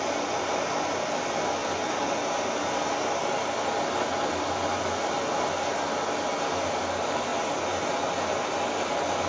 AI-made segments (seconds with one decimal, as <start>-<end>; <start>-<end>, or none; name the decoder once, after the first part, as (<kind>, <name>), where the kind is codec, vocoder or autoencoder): none